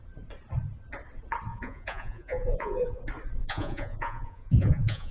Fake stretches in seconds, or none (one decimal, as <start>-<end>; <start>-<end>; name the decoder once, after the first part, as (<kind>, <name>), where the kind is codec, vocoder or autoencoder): 1.5-3.0 (vocoder, Vocos); 3.4-5.1